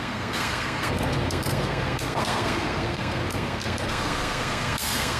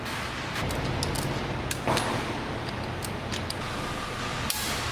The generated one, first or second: first